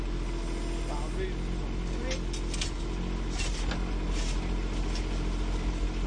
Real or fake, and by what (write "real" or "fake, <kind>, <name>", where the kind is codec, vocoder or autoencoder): real